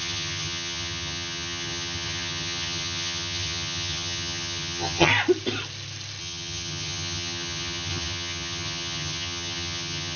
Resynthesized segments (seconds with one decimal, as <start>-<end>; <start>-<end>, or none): 0.0-5.1; 6.2-10.2